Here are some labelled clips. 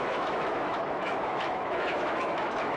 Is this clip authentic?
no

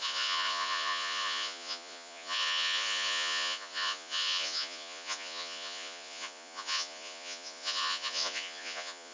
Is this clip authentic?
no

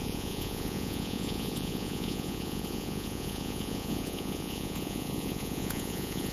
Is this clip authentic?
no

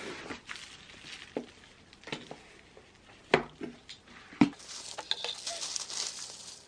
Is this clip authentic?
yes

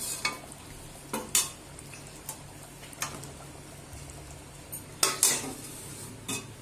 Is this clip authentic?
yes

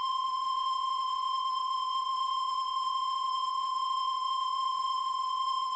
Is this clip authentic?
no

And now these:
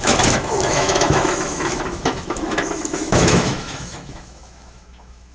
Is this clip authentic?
no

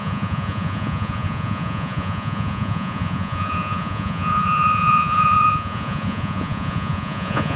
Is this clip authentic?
no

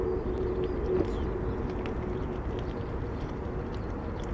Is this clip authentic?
yes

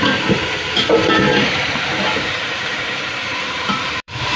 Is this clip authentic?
no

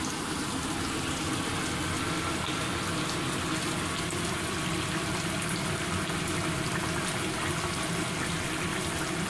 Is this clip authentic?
yes